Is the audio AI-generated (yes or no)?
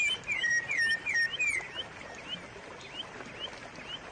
no